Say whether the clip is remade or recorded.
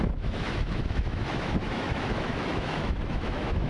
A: remade